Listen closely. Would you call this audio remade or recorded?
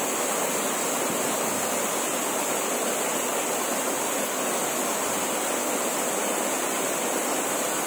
recorded